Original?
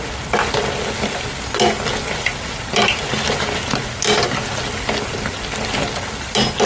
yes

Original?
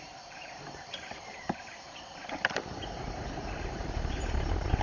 no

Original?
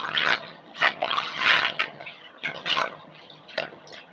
no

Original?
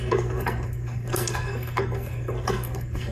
no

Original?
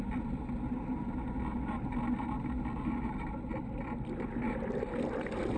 yes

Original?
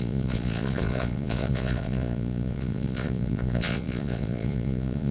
no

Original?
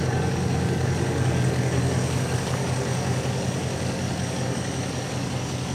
no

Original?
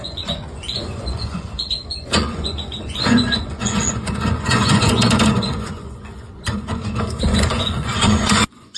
no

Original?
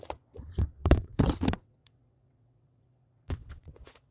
no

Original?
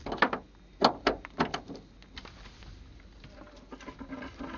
yes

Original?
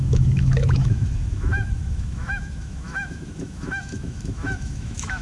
no